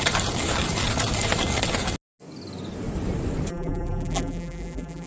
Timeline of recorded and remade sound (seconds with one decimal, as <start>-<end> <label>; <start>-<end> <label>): 0.0-3.5 recorded; 3.5-5.1 remade